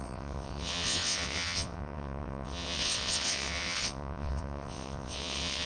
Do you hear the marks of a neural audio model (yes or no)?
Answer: yes